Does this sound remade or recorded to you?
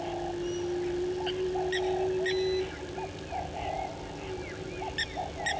recorded